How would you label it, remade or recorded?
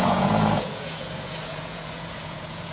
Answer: remade